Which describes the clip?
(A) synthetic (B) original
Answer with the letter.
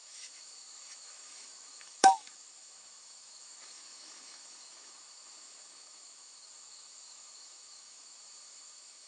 A